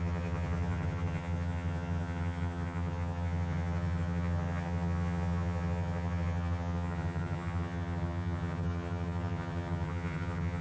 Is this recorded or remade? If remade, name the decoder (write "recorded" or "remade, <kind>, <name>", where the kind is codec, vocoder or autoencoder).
remade, vocoder, HiFi-GAN